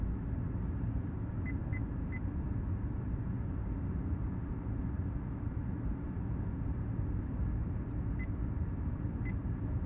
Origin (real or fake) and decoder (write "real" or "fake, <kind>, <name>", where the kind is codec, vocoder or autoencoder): real